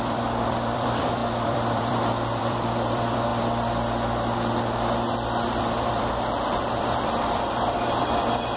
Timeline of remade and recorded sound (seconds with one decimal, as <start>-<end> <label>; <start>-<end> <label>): 0.0-3.3 remade; 3.3-5.9 recorded; 5.9-8.6 remade